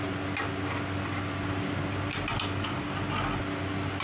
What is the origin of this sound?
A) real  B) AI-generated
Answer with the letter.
A